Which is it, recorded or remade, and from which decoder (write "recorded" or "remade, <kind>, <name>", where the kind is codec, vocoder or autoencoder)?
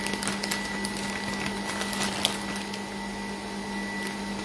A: recorded